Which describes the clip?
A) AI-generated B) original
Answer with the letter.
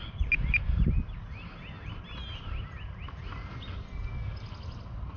B